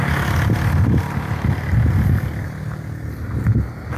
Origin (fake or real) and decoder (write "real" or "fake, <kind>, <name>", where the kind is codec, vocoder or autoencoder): real